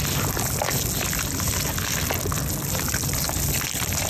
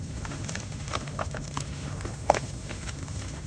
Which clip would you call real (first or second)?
first